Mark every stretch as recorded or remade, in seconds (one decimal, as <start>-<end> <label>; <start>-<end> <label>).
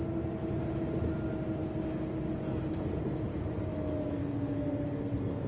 0.0-4.2 recorded; 4.2-5.5 remade